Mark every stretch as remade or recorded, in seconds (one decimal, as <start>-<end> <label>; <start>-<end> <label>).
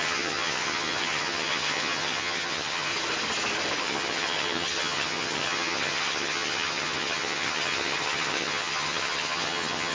0.0-2.9 remade; 2.9-3.8 recorded; 3.8-9.9 remade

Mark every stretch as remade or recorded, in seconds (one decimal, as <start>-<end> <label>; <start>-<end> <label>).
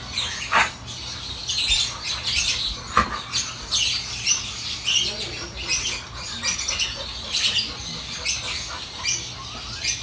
0.0-10.0 recorded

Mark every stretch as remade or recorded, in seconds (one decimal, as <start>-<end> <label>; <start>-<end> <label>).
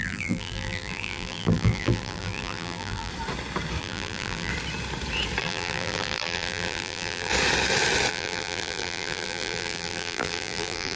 0.0-3.1 remade; 3.1-3.8 recorded; 3.8-4.5 remade; 4.5-5.4 recorded; 5.4-7.3 remade; 7.3-8.1 recorded; 8.1-11.0 remade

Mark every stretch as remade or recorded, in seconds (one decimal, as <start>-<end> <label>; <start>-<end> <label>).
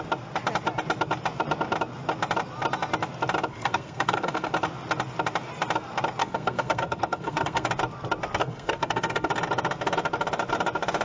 0.0-3.5 recorded; 3.5-4.5 remade; 4.5-6.2 recorded; 6.2-7.7 remade; 7.7-8.4 recorded; 8.4-9.3 remade; 9.3-11.0 recorded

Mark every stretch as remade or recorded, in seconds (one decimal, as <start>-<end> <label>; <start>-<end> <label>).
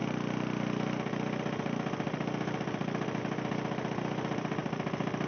0.0-5.3 recorded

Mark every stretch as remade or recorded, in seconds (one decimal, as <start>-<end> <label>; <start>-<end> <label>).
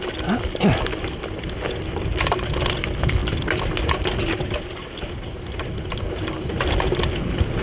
0.0-7.6 recorded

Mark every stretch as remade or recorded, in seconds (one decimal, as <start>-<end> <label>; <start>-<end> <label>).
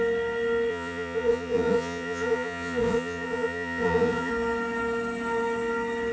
0.0-0.7 recorded; 0.7-4.3 remade; 4.3-6.1 recorded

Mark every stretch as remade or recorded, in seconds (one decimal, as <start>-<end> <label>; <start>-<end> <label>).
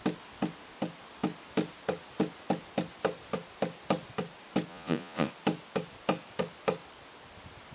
0.0-4.7 recorded; 4.7-5.3 remade; 5.3-7.7 recorded